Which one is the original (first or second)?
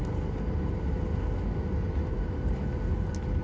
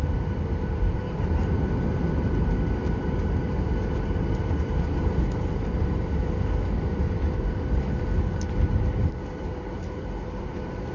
first